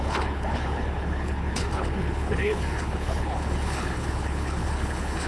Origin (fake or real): fake